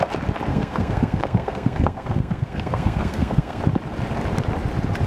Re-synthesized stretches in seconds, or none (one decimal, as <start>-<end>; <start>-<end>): 0.5-3.6